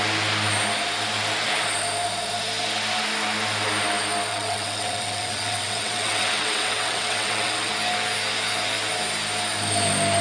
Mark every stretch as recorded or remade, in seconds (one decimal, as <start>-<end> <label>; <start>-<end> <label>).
0.0-4.3 recorded; 4.3-7.7 remade; 7.7-10.2 recorded